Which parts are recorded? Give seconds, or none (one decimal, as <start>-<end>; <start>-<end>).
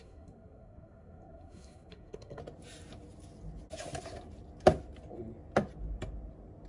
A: 2.4-6.7